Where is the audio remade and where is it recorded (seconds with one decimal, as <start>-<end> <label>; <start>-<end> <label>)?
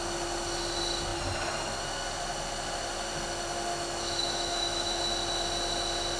0.0-3.7 recorded; 3.7-5.0 remade; 5.0-6.2 recorded